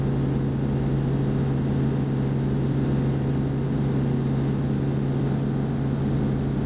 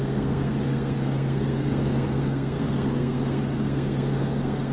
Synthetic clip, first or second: second